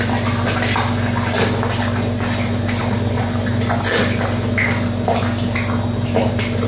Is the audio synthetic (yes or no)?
no